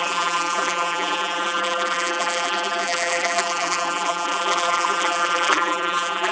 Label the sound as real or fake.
fake